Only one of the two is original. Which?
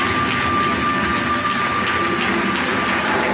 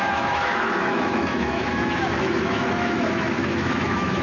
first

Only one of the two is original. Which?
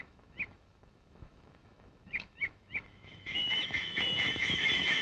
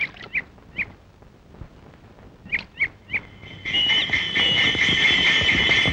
second